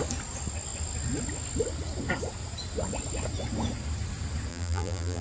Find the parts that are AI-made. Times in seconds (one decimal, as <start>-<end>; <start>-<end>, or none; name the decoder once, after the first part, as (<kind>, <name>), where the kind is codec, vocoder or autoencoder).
4.5-5.2 (vocoder, BigVGAN v2)